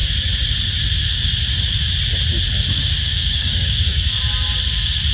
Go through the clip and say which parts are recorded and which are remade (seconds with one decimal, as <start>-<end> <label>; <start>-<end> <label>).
0.0-3.1 recorded; 3.1-4.2 remade; 4.2-5.1 recorded